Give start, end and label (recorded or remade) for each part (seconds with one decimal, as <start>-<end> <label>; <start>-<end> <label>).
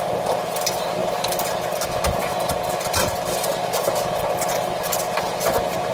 0.0-5.9 recorded